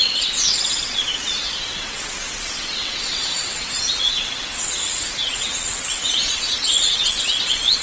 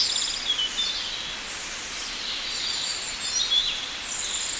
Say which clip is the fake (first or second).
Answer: first